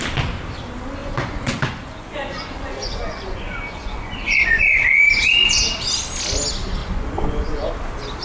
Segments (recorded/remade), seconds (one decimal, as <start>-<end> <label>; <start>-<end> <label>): 0.0-1.0 recorded; 1.0-5.0 remade; 5.0-6.8 recorded; 6.8-7.7 remade; 7.7-8.2 recorded